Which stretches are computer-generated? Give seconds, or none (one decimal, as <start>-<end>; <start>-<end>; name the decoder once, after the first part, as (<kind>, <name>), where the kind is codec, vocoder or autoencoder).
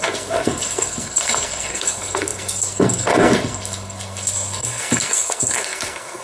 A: 0.0-6.2 (codec, SNAC)